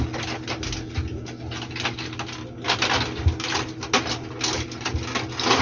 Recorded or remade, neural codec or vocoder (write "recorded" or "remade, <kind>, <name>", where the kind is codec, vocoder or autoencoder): recorded